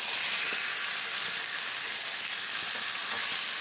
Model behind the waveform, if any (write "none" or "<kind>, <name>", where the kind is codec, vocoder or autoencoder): none